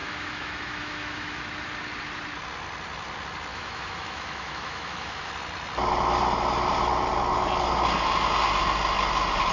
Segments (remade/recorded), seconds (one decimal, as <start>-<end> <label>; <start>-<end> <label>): 0.0-1.4 remade; 1.4-3.5 recorded; 3.5-5.3 remade; 5.3-9.5 recorded